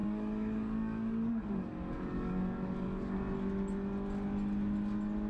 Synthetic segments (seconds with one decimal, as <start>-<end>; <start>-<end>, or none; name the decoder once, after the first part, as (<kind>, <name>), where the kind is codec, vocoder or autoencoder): 0.0-3.2 (codec, DAC)